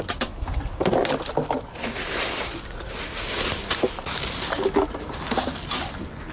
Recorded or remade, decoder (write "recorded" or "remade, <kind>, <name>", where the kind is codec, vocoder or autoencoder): recorded